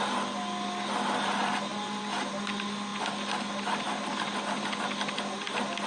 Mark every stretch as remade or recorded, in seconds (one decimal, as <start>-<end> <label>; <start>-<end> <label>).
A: 0.0-5.9 recorded